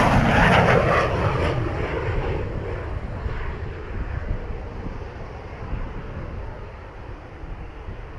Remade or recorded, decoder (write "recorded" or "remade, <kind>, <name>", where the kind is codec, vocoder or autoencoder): recorded